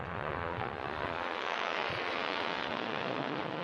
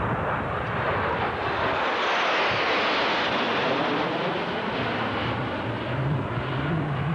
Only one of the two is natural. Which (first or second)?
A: second